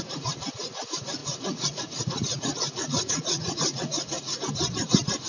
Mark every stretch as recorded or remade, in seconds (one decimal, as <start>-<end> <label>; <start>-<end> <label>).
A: 0.0-1.2 recorded; 1.2-4.4 remade; 4.4-5.3 recorded